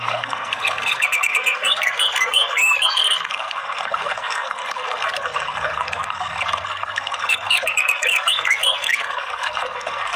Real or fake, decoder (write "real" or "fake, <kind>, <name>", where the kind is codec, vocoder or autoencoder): fake, codec, SNAC